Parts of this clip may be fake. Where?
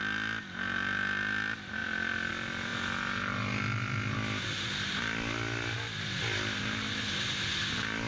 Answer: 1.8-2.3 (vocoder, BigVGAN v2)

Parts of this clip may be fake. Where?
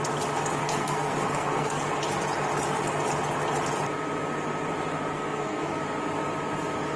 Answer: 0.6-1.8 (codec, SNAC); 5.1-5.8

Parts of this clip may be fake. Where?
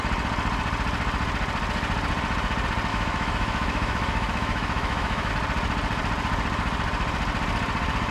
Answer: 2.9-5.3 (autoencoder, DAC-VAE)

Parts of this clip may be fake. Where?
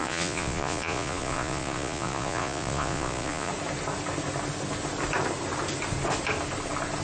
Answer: 0.0-3.5 (vocoder, Vocos)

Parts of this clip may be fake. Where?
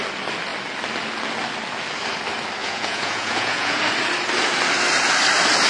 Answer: 2.6-3.8 (vocoder, Vocos)